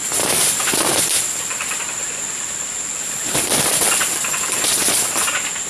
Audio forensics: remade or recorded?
remade